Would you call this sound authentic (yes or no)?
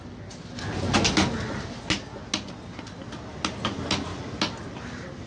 yes